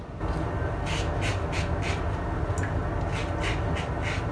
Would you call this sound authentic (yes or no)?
yes